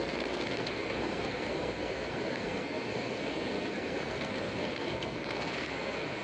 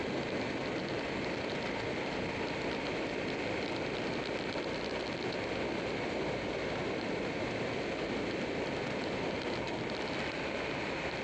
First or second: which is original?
second